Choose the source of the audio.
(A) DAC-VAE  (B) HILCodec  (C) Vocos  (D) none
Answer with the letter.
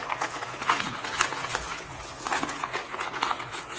C